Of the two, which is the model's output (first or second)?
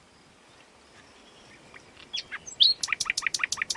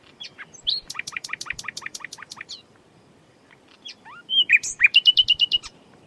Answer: second